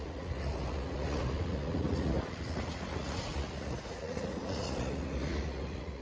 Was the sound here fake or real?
fake